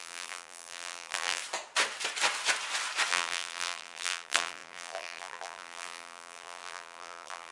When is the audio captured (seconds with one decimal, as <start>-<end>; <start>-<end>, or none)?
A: 1.4-3.1

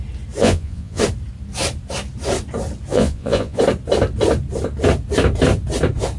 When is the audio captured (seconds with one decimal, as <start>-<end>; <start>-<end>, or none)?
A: 0.0-0.4; 1.0-2.9; 3.6-6.2

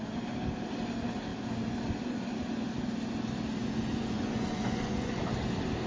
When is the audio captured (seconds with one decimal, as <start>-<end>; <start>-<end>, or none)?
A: 0.0-3.6; 5.1-5.9

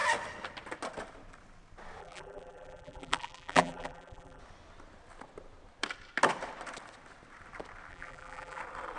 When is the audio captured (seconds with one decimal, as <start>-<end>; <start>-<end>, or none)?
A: 0.0-2.0; 4.4-7.9; 8.6-9.0

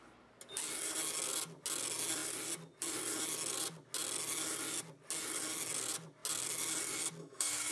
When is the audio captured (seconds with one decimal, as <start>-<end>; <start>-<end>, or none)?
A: 0.0-7.2

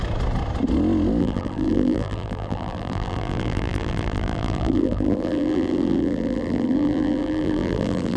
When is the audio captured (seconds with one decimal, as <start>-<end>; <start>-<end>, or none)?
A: 0.0-1.2

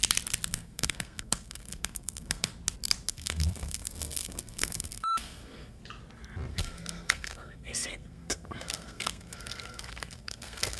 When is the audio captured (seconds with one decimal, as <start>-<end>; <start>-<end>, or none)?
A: 0.0-0.5; 2.5-3.1; 5.8-6.5